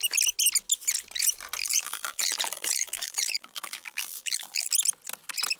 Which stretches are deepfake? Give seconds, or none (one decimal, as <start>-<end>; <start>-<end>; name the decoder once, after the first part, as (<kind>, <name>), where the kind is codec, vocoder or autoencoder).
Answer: 1.6-4.7 (vocoder, BigVGAN v2)